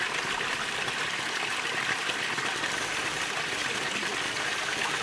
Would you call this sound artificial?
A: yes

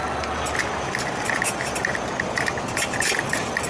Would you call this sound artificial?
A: no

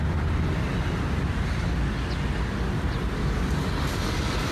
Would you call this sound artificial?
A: no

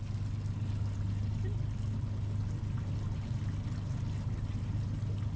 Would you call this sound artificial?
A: no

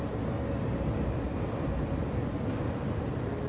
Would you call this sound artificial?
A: no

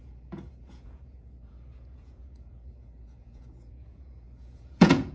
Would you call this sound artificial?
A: yes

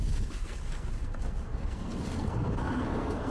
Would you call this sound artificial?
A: yes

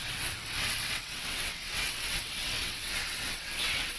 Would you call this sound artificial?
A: yes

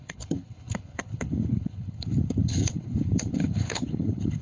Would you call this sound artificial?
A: yes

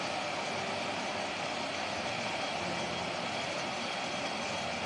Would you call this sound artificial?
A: no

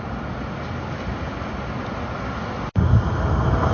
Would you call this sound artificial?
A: no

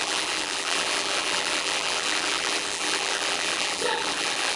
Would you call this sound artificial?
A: yes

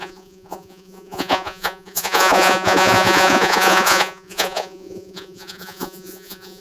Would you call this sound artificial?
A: yes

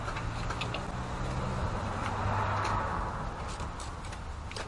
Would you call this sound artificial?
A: no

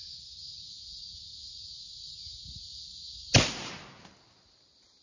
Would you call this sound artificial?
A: no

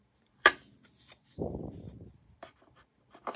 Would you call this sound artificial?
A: yes